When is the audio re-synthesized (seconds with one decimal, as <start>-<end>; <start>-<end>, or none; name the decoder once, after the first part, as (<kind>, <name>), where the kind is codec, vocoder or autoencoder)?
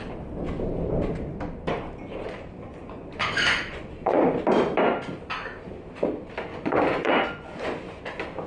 2.7-4.4 (vocoder, Vocos); 6.5-8.0